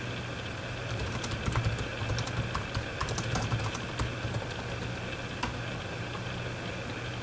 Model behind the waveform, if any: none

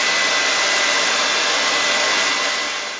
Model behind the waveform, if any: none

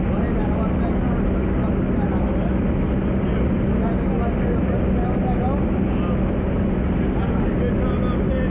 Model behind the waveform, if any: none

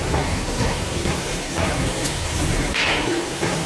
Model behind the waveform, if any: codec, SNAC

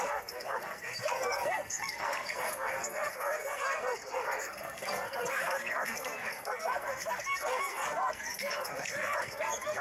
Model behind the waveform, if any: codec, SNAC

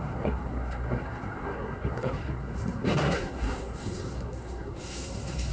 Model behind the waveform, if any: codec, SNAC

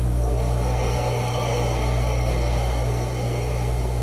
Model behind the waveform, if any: codec, SNAC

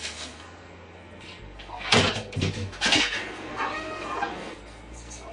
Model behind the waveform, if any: codec, SNAC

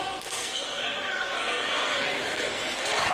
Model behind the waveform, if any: codec, SNAC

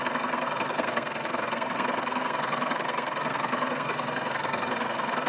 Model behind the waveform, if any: codec, SNAC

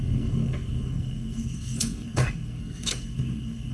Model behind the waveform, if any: codec, SNAC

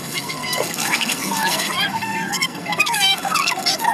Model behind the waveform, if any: codec, SNAC